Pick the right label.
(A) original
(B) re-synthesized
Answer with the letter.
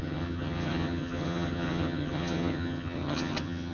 B